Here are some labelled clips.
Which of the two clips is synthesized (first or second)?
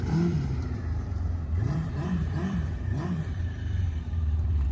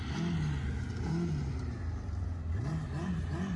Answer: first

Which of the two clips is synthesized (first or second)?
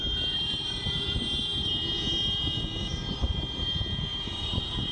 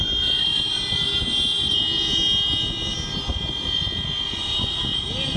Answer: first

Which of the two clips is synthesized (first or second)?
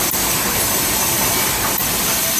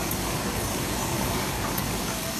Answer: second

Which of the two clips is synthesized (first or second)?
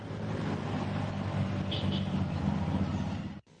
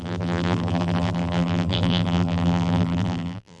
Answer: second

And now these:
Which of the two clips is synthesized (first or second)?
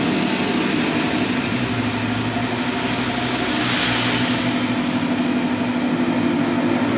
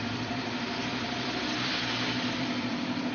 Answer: second